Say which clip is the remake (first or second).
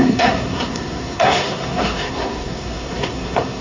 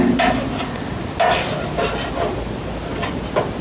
first